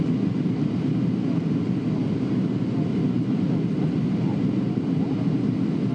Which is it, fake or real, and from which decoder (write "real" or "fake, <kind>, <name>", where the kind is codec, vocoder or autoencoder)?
real